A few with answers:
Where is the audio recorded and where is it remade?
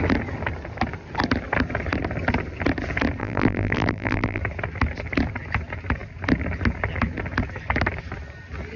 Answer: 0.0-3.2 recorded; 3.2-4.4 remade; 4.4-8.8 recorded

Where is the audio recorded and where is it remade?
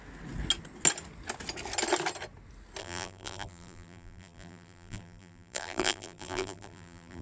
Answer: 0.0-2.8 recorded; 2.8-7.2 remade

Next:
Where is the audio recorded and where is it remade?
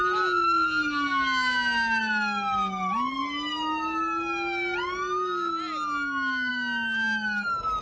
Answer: 0.0-7.8 recorded